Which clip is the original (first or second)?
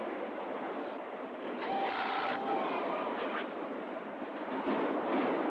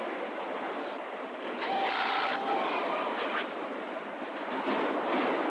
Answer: first